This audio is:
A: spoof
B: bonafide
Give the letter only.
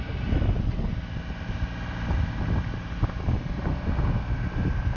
B